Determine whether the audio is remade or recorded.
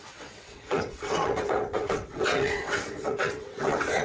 remade